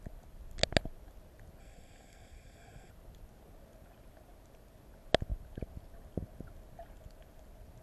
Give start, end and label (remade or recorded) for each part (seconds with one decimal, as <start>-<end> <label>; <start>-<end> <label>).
0.0-1.6 recorded; 1.6-2.9 remade; 2.9-7.8 recorded